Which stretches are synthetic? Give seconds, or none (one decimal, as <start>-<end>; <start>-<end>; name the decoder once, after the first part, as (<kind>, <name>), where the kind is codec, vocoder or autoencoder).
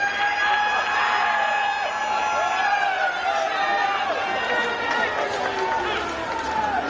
none